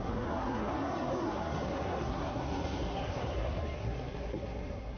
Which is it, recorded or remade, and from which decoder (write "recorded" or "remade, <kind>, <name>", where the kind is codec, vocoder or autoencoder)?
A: remade, codec, SNAC